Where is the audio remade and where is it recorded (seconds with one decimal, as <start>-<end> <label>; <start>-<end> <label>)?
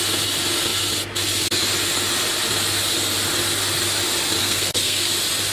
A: 0.0-4.4 recorded; 4.4-5.1 remade; 5.1-5.5 recorded